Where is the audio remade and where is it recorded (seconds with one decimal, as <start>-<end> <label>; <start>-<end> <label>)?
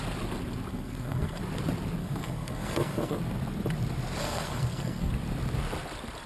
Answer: 0.0-0.7 recorded; 0.7-1.4 remade; 1.4-2.0 recorded; 2.0-3.2 remade; 3.2-4.2 recorded; 4.2-5.1 remade; 5.1-6.3 recorded